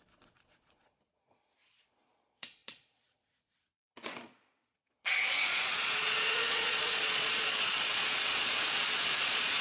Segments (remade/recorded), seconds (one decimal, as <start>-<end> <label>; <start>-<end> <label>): 0.0-9.6 remade